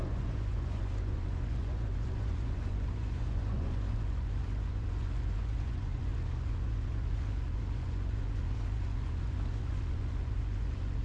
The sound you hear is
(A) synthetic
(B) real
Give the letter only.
A